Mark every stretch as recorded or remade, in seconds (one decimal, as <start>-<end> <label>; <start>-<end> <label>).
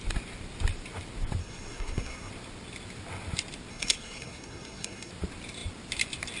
0.0-1.4 recorded; 1.4-2.3 remade; 2.3-3.7 recorded; 3.7-5.1 remade; 5.1-6.4 recorded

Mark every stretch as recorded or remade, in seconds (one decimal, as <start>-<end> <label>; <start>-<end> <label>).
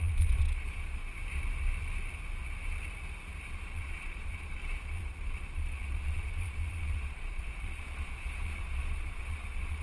0.0-1.0 remade; 1.0-3.5 recorded; 3.5-9.8 remade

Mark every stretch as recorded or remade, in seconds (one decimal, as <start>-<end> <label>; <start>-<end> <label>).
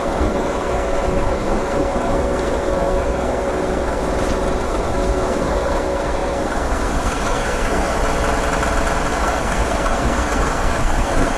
0.0-4.0 remade; 4.0-4.6 recorded; 4.6-8.0 remade; 8.0-9.1 recorded; 9.1-11.4 remade